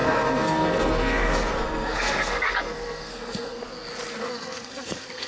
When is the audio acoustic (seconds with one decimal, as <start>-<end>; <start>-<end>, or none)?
3.6-4.2